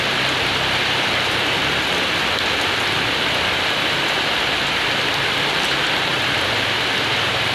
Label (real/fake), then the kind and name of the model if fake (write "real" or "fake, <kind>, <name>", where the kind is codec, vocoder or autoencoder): fake, vocoder, BigVGAN v2